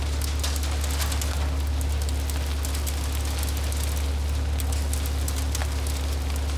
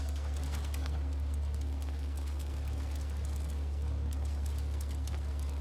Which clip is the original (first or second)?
first